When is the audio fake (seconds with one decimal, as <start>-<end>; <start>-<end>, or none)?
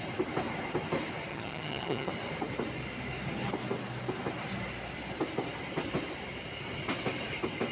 1.3-2.1